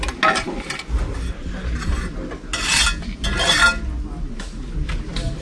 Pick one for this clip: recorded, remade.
recorded